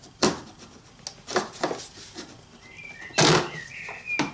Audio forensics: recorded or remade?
recorded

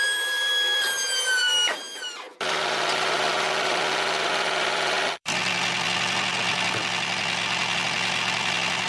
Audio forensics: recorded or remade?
remade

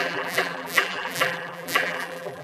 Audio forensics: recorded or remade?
remade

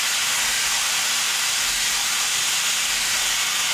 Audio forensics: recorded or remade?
recorded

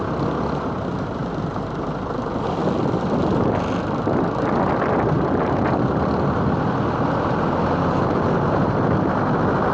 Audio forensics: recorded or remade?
recorded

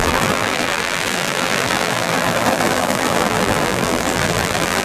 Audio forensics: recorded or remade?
remade